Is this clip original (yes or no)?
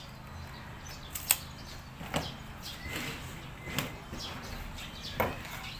yes